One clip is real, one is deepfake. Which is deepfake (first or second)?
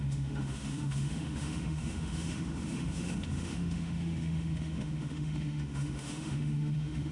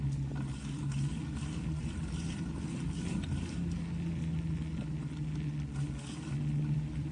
first